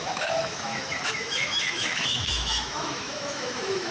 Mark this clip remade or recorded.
remade